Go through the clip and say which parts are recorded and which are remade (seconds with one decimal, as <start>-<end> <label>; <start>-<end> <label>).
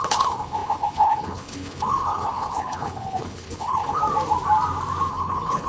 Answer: 0.0-4.0 remade; 4.0-5.1 recorded; 5.1-5.7 remade